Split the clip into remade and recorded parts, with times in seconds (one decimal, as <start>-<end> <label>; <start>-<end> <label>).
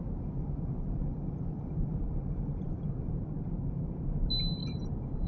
0.0-1.9 recorded; 1.9-2.8 remade; 2.8-4.6 recorded; 4.6-5.3 remade